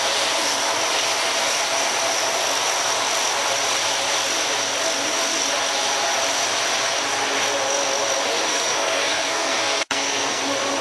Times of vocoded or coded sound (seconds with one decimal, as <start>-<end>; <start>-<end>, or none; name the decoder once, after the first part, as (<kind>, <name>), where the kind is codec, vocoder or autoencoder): 8.5-10.4 (codec, SNAC)